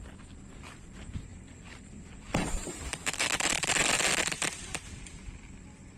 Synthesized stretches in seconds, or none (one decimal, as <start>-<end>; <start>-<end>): 1.3-3.7

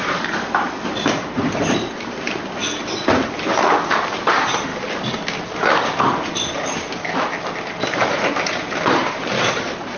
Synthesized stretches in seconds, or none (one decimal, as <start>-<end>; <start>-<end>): 0.0-2.6; 3.3-4.7; 6.0-7.0; 8.1-10.0

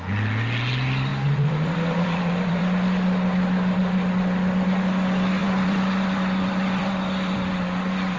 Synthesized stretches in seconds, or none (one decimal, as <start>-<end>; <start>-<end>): 1.1-2.6; 5.4-8.2

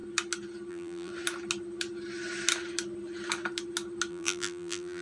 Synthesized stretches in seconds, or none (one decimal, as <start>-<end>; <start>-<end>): 0.7-1.1; 4.1-5.0